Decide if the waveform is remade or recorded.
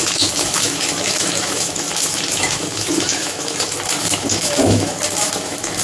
remade